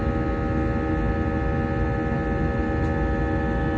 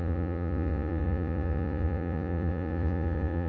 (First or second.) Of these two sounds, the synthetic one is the second